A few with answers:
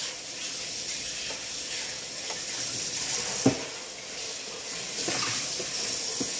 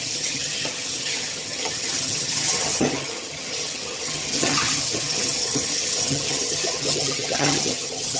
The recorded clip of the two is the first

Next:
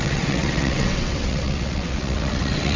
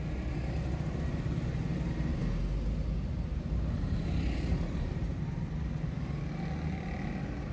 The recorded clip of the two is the second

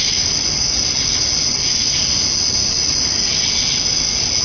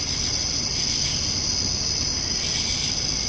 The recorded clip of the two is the first